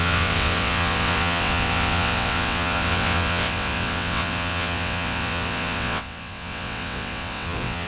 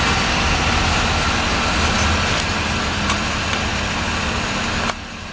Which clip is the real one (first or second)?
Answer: second